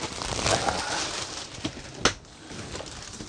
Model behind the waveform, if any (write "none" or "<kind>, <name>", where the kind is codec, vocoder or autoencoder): none